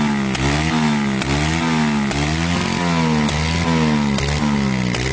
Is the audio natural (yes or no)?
yes